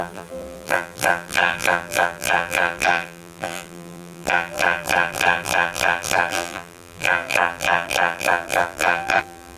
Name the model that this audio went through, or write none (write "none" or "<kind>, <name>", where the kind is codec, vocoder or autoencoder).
vocoder, BigVGAN v2